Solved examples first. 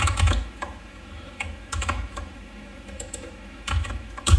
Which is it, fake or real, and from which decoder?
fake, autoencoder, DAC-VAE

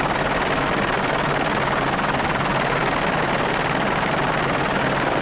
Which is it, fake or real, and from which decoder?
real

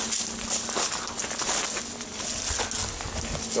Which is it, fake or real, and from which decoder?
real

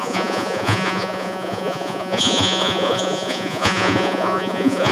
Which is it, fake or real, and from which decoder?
fake, vocoder, Vocos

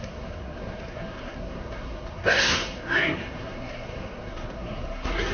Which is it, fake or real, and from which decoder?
fake, codec, SNAC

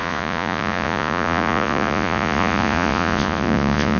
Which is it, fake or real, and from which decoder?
fake, vocoder, Vocos